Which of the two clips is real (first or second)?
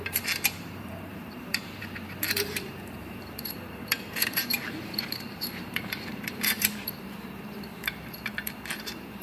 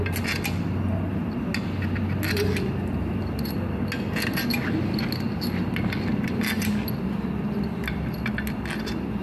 second